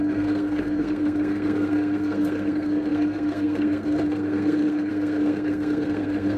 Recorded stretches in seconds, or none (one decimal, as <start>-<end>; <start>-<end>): none